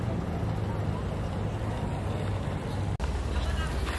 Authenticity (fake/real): real